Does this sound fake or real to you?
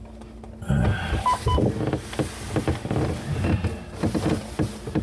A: real